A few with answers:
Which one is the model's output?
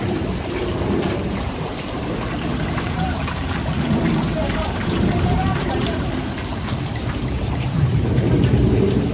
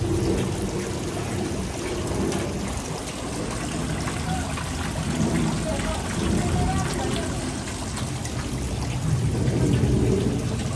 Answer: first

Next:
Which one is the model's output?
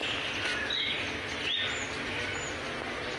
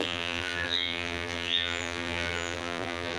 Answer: second